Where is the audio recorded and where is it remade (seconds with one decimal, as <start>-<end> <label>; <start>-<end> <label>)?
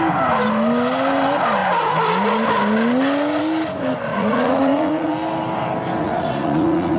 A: 0.0-4.1 recorded; 4.1-5.1 remade; 5.1-6.0 recorded; 6.0-7.0 remade